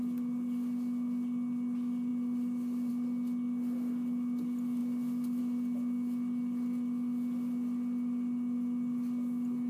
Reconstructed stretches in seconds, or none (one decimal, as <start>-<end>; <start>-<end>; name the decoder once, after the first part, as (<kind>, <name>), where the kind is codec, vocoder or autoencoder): none